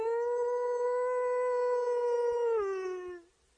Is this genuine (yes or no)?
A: yes